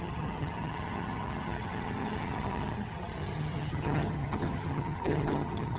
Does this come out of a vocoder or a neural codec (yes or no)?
yes